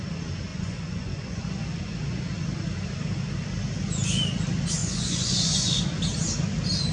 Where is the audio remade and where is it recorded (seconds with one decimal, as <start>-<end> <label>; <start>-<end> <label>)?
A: 0.0-0.5 recorded; 0.5-2.2 remade; 2.2-4.8 recorded; 4.8-5.8 remade; 5.8-6.9 recorded